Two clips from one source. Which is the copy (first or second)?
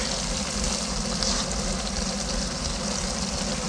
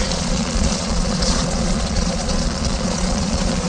second